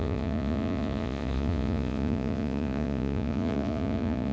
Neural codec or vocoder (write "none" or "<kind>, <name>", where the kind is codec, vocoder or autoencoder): vocoder, Vocos